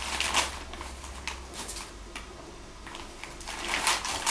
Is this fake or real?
real